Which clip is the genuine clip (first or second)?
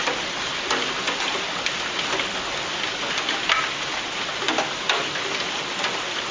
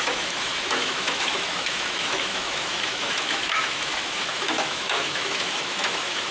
first